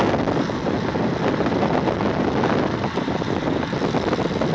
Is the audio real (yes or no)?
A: yes